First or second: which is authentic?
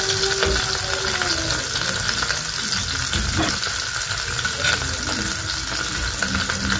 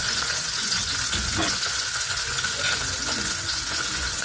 first